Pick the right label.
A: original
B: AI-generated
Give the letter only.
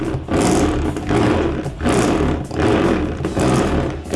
A